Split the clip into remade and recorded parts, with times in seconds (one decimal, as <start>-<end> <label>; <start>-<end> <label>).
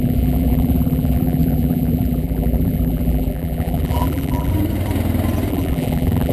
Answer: 0.0-4.5 remade; 4.5-5.5 recorded; 5.5-6.3 remade